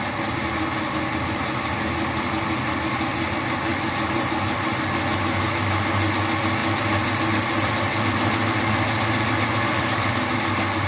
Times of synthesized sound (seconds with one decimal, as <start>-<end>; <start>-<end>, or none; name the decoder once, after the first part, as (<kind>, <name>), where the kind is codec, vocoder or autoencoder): none